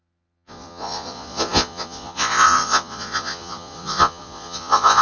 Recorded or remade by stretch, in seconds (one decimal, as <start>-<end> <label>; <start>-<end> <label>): 0.0-5.0 remade

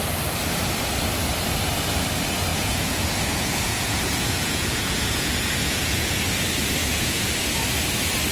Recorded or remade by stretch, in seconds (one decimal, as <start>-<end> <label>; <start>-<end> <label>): 0.0-2.5 recorded; 2.5-6.2 remade; 6.2-6.8 recorded; 6.8-7.3 remade; 7.3-8.3 recorded

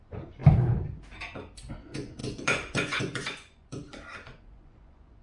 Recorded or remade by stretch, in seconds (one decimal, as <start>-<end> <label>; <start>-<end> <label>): 0.0-0.4 remade; 0.4-1.7 recorded; 1.7-3.7 remade; 3.7-4.3 recorded; 4.3-5.2 remade

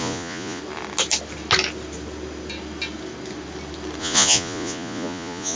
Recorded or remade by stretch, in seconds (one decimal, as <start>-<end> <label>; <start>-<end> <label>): 0.0-0.6 remade; 0.6-4.0 recorded; 4.0-5.6 remade

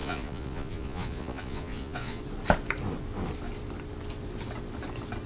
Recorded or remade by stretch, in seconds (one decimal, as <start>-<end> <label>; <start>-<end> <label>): 0.0-2.2 remade; 2.2-5.3 recorded

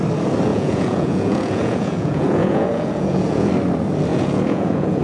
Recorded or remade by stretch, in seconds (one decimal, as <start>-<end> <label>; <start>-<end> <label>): 0.0-0.5 recorded; 0.5-3.5 remade; 3.5-4.1 recorded; 4.1-5.0 remade

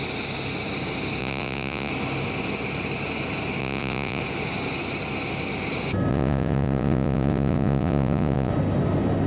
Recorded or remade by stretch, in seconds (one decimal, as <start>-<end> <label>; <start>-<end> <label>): 0.0-1.2 recorded; 1.2-1.9 remade; 1.9-3.6 recorded; 3.6-4.2 remade; 4.2-6.1 recorded; 6.1-8.5 remade; 8.5-9.3 recorded

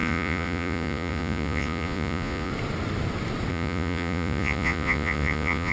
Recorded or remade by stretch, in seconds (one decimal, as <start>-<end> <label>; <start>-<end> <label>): 0.0-2.5 remade; 2.5-3.5 recorded; 3.5-5.7 remade